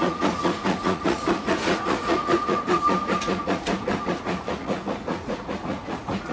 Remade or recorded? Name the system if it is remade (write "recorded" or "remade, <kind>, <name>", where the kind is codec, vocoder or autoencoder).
remade, vocoder, Vocos